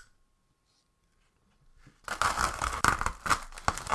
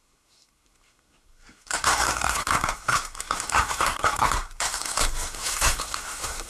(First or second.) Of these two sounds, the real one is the first